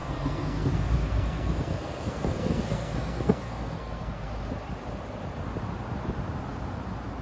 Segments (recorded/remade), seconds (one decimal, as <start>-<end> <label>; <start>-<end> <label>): 0.0-4.3 remade; 4.3-7.2 recorded